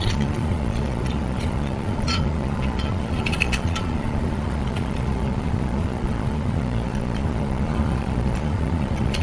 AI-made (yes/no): yes